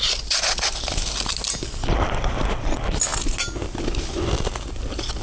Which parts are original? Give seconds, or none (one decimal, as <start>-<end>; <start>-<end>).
0.0-5.2